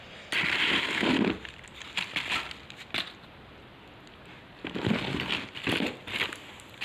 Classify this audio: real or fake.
real